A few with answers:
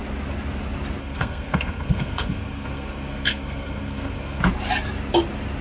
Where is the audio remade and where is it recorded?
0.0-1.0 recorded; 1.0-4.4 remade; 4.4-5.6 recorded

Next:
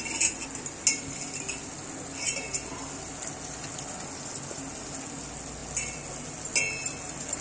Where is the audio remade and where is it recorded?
0.0-7.4 recorded

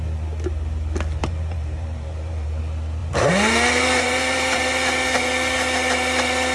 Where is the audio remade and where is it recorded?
0.0-1.2 recorded; 1.2-2.6 remade; 2.6-3.0 recorded; 3.0-4.6 remade; 4.6-6.5 recorded

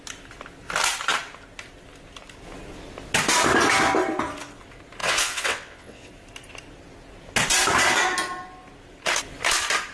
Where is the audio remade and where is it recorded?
0.0-5.0 recorded; 5.0-6.1 remade; 6.1-9.9 recorded

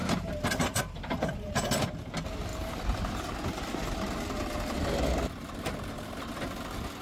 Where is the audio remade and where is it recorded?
0.0-1.5 remade; 1.5-7.0 recorded

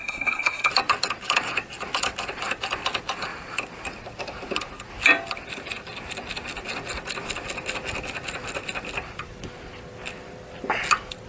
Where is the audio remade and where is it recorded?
0.0-0.7 remade; 0.7-11.3 recorded